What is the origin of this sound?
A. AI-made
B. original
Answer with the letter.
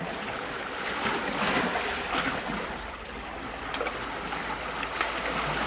B